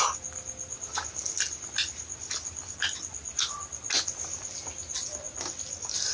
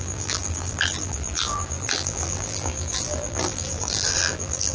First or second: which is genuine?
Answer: first